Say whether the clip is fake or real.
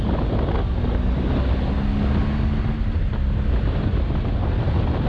real